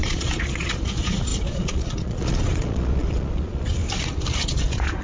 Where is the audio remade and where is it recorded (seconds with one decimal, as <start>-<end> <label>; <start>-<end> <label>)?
0.0-3.8 remade; 3.8-4.4 recorded; 4.4-5.0 remade